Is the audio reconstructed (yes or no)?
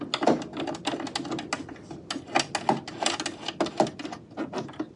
no